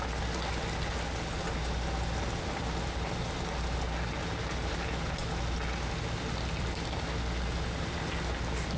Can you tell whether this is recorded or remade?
recorded